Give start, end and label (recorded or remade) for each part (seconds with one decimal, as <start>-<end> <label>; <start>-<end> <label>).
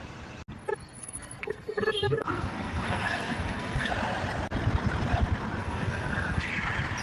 0.0-1.0 recorded; 1.0-3.9 remade; 3.9-5.6 recorded; 5.6-6.5 remade; 6.5-7.0 recorded